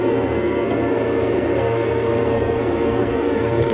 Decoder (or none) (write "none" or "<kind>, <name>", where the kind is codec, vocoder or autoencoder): codec, SNAC